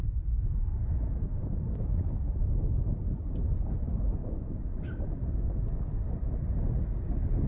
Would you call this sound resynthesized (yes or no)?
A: no